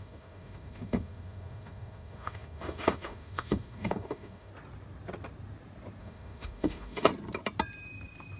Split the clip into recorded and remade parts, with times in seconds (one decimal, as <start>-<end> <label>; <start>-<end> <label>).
0.0-4.5 remade; 4.5-6.0 recorded; 6.0-7.1 remade; 7.1-8.4 recorded